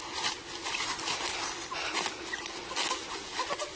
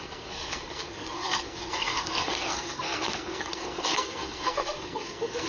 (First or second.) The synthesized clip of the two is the second